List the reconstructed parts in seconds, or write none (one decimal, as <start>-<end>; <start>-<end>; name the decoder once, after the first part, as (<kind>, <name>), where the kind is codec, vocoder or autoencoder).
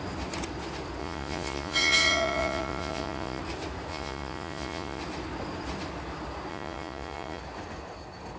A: 1.0-3.4 (vocoder, Vocos); 3.9-5.0; 6.5-7.4